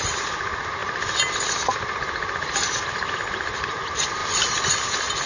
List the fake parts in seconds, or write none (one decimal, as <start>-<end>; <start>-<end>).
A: 4.2-4.7